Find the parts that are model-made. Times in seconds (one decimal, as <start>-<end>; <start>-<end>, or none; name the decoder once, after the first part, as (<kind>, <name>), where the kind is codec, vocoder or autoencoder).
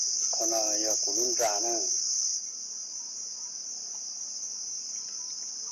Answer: none